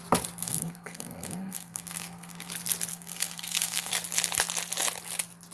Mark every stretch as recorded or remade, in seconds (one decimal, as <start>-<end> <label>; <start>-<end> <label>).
0.0-0.4 recorded; 0.4-2.5 remade; 2.5-2.9 recorded; 2.9-3.9 remade; 3.9-5.5 recorded